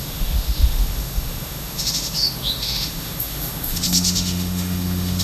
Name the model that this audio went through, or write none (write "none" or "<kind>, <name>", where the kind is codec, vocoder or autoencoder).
autoencoder, DAC-VAE